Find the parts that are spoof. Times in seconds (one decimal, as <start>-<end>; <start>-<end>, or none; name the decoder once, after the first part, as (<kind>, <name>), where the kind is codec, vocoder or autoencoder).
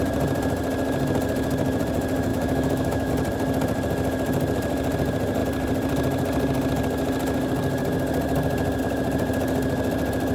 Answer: 2.3-3.1 (autoencoder, DAC-VAE)